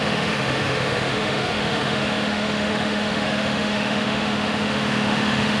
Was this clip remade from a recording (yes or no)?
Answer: yes